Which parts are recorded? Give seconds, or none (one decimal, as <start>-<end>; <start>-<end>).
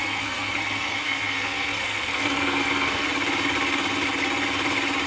3.1-5.1